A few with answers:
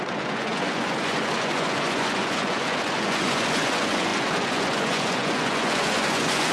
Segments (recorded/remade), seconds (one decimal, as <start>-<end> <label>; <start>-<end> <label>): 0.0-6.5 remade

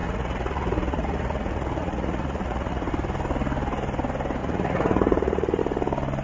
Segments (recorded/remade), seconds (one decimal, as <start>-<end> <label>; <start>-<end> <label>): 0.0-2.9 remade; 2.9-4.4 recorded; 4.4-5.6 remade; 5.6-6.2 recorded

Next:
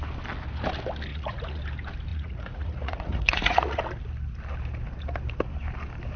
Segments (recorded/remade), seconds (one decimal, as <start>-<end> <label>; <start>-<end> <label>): 0.0-1.1 recorded; 1.1-1.6 remade; 1.6-2.1 recorded; 2.1-3.8 remade; 3.8-6.2 recorded

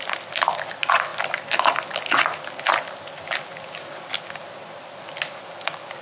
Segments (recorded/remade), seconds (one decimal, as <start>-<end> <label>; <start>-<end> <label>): 0.0-6.0 recorded